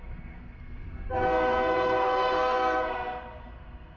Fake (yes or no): yes